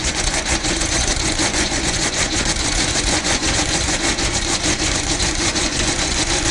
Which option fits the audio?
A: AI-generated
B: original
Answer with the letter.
A